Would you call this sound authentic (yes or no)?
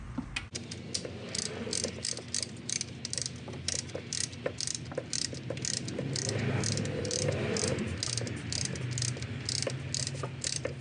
yes